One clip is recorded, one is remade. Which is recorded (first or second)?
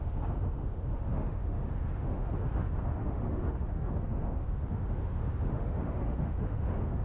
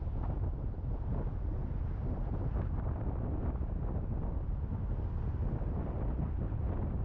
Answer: second